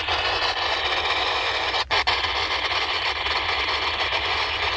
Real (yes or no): no